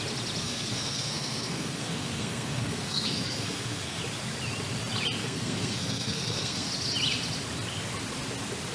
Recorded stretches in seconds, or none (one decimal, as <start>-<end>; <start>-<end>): 0.0-0.4; 4.0-5.2; 6.7-8.7